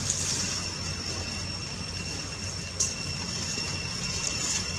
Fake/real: real